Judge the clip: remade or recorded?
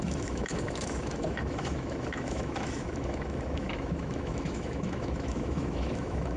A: remade